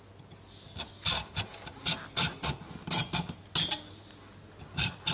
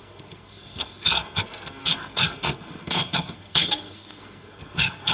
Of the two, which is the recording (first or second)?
first